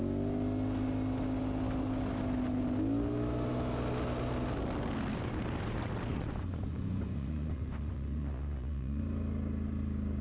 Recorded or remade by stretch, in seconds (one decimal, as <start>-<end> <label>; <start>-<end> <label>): 0.0-6.1 recorded; 6.1-9.0 remade; 9.0-10.2 recorded